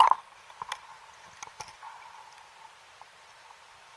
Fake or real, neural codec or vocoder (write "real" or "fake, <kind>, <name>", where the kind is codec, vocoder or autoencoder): real